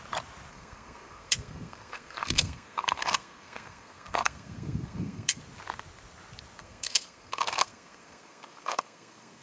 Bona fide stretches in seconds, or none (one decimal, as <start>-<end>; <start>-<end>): 0.0-0.5; 5.4-6.6